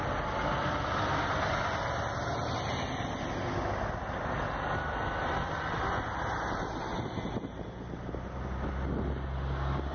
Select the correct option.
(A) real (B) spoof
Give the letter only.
A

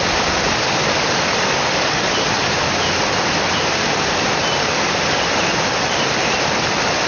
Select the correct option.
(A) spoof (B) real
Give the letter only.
B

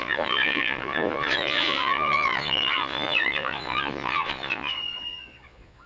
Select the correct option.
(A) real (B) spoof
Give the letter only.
B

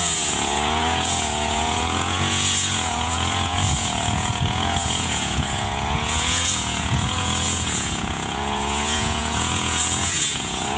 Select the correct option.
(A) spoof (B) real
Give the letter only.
A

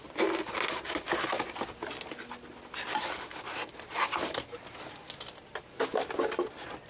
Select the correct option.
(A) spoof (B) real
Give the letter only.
B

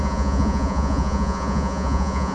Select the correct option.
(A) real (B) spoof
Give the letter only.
B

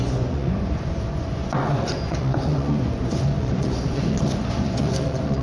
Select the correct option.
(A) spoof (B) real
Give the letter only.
A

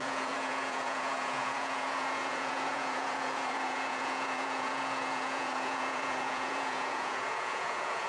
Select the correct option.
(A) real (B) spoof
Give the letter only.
B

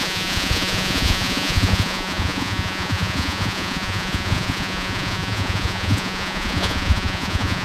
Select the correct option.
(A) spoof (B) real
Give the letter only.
A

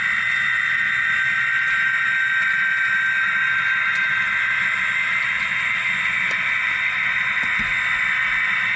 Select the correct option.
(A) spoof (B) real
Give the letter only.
B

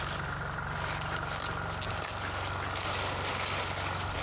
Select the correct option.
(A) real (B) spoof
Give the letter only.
A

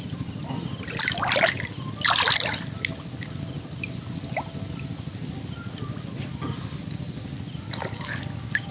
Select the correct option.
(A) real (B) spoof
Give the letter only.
A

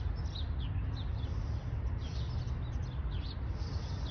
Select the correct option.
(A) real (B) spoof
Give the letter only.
A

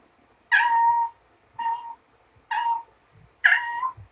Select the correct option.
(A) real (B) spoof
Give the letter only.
A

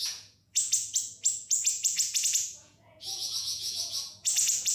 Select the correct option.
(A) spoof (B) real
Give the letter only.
A